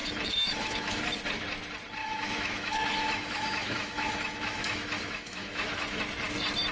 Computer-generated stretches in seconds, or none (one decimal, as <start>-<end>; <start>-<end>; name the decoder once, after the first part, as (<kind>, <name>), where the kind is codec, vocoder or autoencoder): 0.0-1.0 (autoencoder, DAC-VAE); 2.0-6.0